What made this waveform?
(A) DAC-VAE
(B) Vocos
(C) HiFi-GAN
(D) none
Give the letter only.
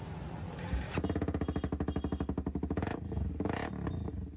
D